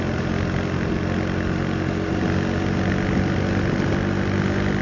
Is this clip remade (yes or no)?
no